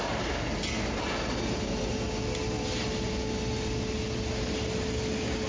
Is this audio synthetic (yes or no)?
no